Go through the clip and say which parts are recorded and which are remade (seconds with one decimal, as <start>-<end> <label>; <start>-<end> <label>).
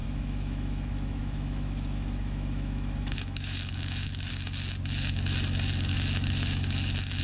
0.0-4.3 remade; 4.3-5.9 recorded; 5.9-7.2 remade